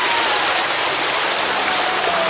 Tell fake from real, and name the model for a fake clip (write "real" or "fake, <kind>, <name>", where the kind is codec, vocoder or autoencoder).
real